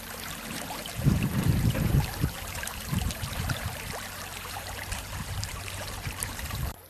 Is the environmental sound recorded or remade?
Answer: remade